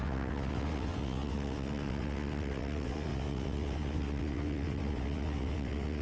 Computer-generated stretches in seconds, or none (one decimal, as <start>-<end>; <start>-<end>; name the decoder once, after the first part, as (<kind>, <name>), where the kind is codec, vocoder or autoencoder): 0.0-6.0 (vocoder, WaveNeXt)